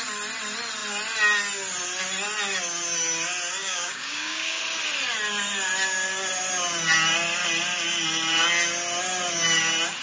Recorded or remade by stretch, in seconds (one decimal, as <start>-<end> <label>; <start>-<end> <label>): 0.0-3.6 recorded; 3.6-4.6 remade; 4.6-10.0 recorded